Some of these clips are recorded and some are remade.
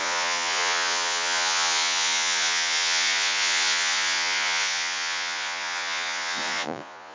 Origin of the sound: remade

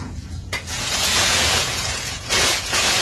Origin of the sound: remade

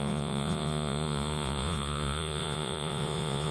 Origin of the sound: remade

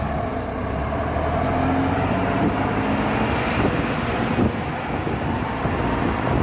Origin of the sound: recorded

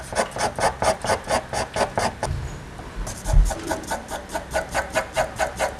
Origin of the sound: recorded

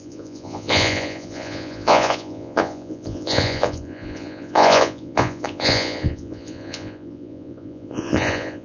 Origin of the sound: remade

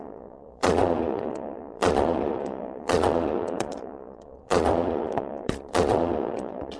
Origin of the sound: remade